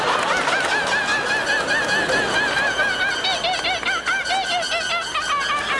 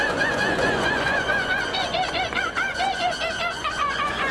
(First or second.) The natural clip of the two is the first